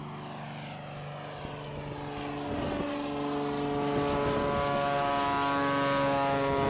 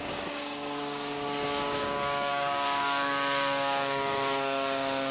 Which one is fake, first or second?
second